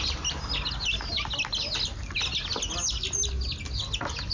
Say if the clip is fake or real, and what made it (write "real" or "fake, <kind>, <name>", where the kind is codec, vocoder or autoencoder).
real